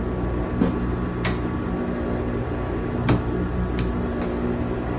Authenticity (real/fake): real